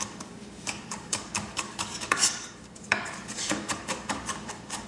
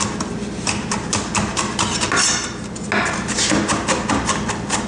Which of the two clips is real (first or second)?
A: second